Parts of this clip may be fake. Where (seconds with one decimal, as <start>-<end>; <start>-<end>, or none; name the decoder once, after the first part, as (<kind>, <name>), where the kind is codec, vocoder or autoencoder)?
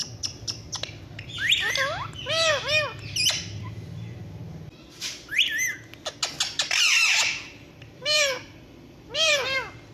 3.4-4.4 (vocoder, BigVGAN v2); 7.7-9.9